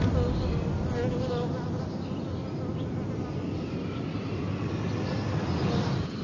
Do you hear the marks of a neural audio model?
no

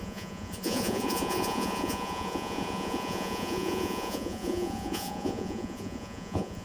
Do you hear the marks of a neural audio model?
yes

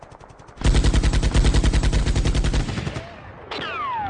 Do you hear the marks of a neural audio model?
no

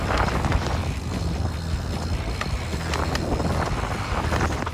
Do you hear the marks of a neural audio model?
no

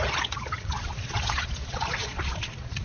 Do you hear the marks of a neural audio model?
yes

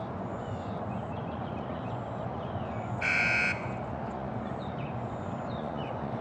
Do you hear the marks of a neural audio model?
yes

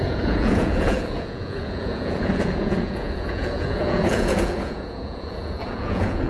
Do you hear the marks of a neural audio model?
yes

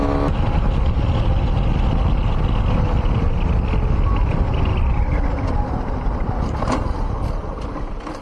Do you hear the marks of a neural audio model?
no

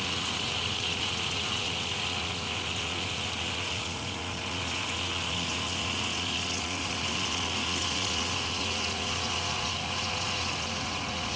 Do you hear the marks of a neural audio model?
yes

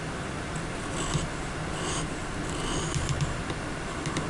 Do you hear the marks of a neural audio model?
no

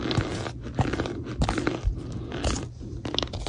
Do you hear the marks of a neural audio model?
no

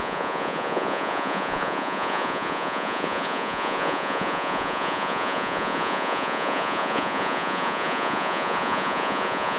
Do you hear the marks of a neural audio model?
yes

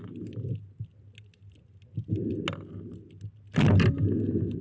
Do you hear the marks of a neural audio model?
no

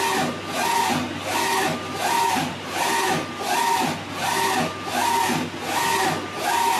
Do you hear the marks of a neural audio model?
no